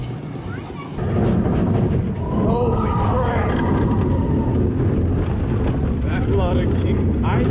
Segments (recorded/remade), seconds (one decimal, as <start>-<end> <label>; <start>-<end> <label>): 0.0-7.5 recorded